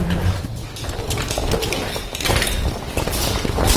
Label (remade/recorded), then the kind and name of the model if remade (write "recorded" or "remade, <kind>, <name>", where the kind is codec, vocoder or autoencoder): recorded